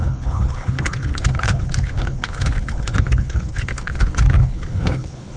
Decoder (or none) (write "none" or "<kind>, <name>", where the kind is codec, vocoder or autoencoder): codec, HILCodec